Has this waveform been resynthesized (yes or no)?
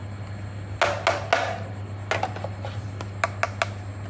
no